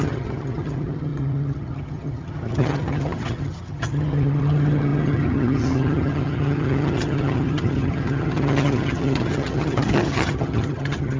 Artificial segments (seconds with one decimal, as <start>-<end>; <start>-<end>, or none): 0.0-11.2